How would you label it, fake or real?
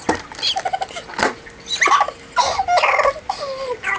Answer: real